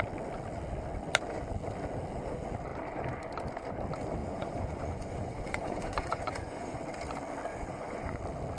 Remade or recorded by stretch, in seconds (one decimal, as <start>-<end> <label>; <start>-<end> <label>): 0.0-4.2 recorded; 4.2-6.8 remade; 6.8-7.5 recorded; 7.5-8.2 remade; 8.2-8.6 recorded